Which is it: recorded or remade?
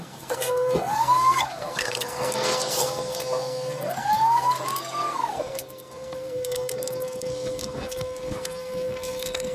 remade